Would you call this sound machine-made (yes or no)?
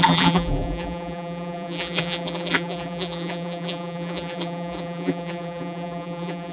yes